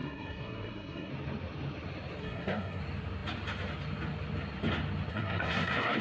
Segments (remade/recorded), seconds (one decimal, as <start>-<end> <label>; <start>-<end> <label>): 0.0-1.1 remade; 1.1-2.2 recorded; 2.2-2.8 remade; 2.8-5.1 recorded; 5.1-6.0 remade